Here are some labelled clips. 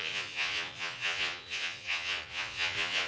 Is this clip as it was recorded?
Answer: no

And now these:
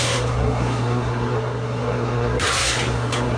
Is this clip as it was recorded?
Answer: no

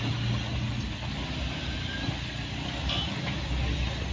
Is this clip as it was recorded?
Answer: yes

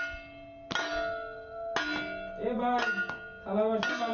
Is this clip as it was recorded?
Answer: yes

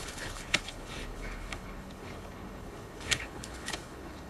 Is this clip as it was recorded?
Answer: no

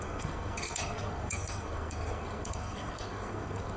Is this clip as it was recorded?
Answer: no